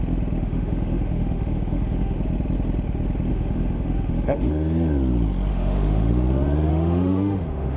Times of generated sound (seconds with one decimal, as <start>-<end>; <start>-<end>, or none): 0.4-2.2; 3.3-4.5; 5.5-6.1; 6.7-7.8